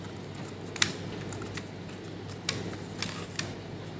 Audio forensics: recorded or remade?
recorded